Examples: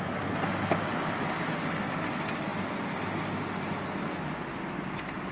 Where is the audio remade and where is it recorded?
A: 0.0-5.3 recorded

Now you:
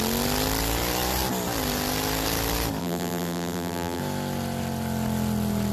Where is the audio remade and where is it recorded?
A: 0.0-2.8 recorded; 2.8-4.0 remade; 4.0-5.7 recorded

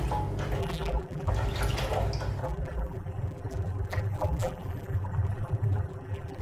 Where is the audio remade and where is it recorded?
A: 0.0-0.6 recorded; 0.6-1.3 remade; 1.3-2.4 recorded; 2.4-6.4 remade

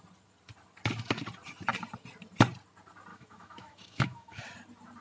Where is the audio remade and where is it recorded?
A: 0.0-3.1 recorded; 3.1-4.4 remade; 4.4-5.0 recorded

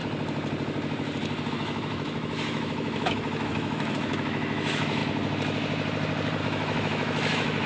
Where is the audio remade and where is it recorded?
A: 0.0-1.5 recorded; 1.5-5.0 remade; 5.0-6.4 recorded; 6.4-7.7 remade